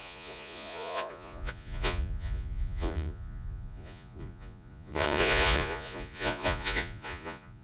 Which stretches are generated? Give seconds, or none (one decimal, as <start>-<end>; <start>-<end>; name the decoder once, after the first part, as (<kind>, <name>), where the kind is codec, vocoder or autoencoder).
0.0-7.6 (vocoder, Vocos)